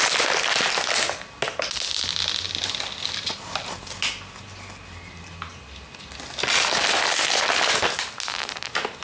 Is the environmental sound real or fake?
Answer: real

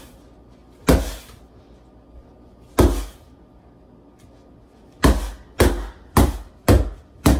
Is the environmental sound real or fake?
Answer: real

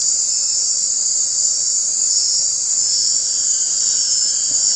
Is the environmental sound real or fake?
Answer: real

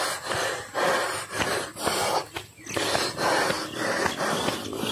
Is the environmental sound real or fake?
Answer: real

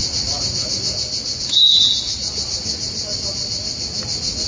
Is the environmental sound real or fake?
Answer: real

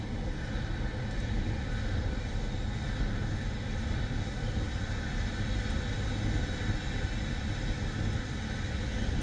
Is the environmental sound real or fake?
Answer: real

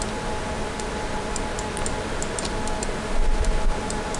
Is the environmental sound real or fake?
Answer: real